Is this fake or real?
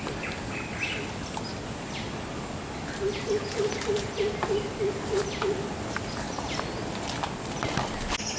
real